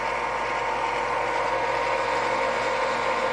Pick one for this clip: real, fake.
real